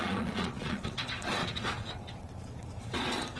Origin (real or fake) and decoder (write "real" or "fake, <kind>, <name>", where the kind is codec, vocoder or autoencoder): fake, vocoder, Vocos